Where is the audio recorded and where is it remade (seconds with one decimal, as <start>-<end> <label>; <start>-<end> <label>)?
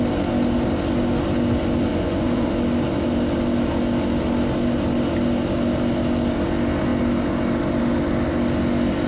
0.0-1.9 recorded; 1.9-2.5 remade; 2.5-9.1 recorded